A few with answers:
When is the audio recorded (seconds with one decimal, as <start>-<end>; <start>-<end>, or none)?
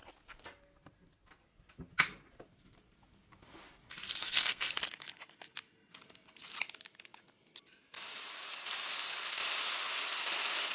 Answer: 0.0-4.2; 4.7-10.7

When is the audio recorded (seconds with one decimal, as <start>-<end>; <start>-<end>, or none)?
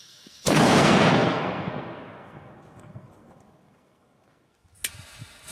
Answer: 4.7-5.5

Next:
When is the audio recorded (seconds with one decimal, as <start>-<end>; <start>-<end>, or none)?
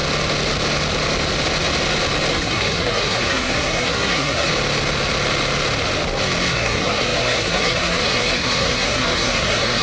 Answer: 0.0-2.3; 4.5-6.5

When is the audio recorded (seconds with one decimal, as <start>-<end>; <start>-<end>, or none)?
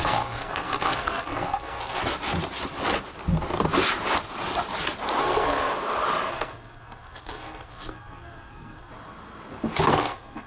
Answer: 2.0-5.2; 5.7-6.3; 8.9-9.9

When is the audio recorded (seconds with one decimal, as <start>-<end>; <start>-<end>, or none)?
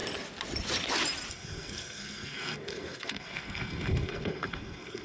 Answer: 0.0-1.3